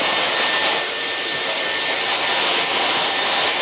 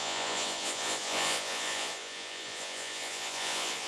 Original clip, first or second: first